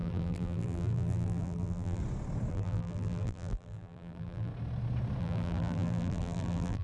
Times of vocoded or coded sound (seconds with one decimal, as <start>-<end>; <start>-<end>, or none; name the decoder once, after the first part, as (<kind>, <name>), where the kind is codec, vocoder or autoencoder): 0.0-2.0 (vocoder, BigVGAN v2); 2.5-4.5; 5.2-6.8